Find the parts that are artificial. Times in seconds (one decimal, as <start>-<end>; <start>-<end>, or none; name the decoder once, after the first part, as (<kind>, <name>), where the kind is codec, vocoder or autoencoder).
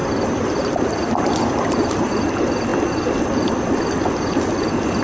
0.0-2.3 (vocoder, BigVGAN v2)